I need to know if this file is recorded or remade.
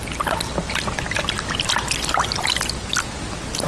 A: recorded